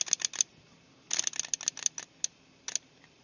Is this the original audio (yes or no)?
yes